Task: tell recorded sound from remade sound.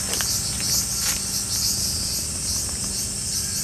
recorded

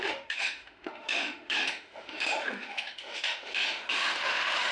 remade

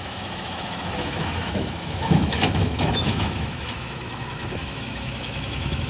remade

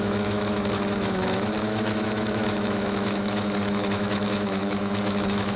remade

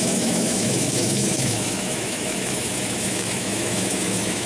remade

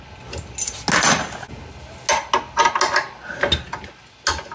recorded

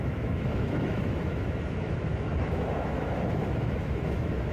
remade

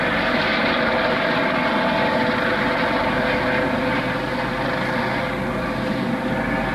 recorded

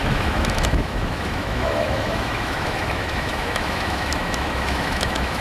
remade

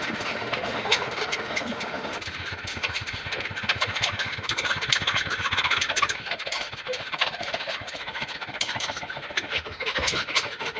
remade